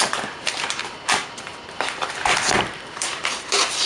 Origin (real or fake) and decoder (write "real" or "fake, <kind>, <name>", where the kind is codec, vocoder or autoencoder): fake, vocoder, BigVGAN v2